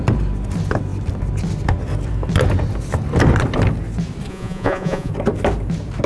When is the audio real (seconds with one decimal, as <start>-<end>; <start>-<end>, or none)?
0.0-4.3; 5.1-6.1